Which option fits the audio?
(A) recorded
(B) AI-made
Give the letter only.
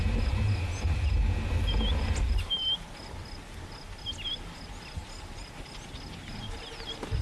A